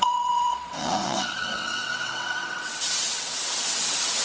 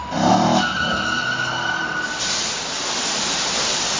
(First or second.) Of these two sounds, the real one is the second